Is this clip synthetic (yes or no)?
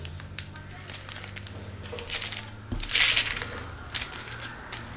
no